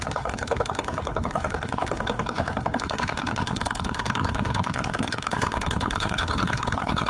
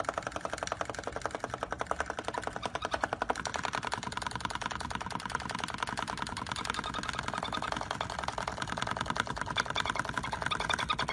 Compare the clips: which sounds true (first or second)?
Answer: second